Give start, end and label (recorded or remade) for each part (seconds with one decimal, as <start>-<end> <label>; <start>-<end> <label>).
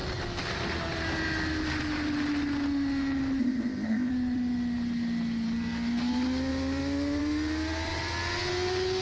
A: 0.0-3.4 recorded; 3.4-4.1 remade; 4.1-9.0 recorded